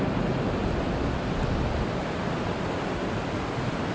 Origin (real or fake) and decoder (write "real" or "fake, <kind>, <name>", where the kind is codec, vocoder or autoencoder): real